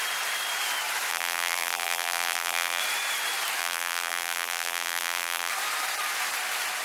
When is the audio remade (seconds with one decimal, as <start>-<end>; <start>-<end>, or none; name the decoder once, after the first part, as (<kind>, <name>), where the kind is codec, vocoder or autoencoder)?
1.1-2.8 (vocoder, BigVGAN v2); 3.6-5.5